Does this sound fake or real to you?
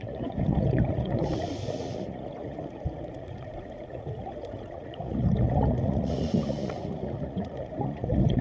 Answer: fake